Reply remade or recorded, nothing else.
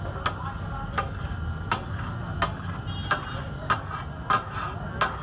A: recorded